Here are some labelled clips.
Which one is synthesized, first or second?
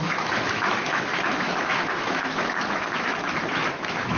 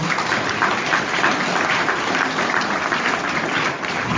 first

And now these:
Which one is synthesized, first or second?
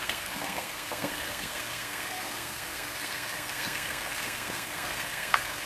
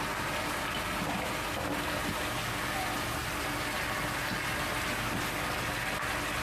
first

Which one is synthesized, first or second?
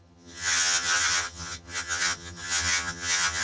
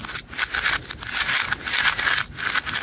first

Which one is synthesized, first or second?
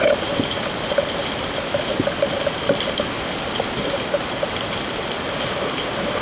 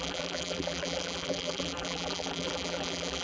second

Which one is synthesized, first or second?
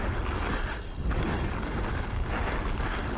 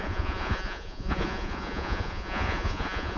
second